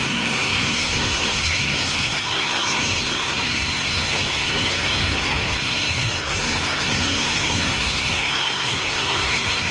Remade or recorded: remade